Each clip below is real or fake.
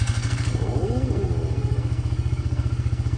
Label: fake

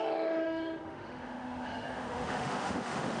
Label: fake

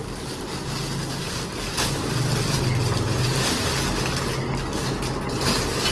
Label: real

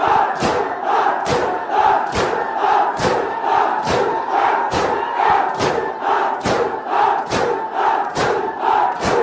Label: fake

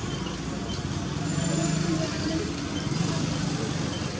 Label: real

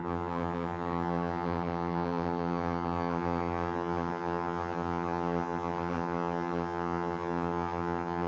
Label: fake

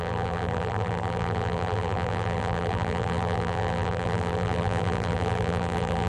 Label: fake